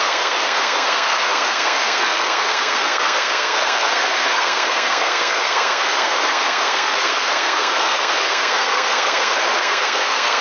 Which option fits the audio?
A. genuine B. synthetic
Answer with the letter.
B